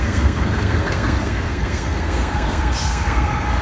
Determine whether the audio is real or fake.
fake